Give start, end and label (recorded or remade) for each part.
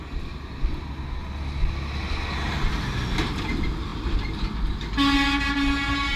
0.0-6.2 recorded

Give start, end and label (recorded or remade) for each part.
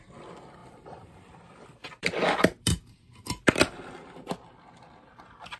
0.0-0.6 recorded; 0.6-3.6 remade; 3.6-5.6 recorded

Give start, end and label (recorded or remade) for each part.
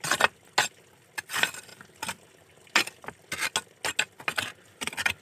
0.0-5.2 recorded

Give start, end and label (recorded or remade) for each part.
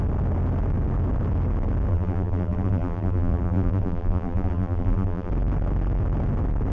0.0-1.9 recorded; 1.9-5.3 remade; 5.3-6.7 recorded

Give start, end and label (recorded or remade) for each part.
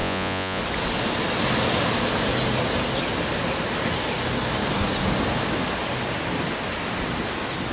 0.0-0.6 remade; 0.6-7.7 recorded